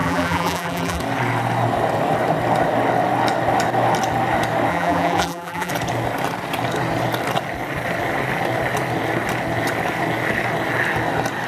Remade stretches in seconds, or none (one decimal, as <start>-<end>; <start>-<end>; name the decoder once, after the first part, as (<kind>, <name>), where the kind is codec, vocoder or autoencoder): 0.0-1.0 (vocoder, BigVGAN v2); 4.7-5.7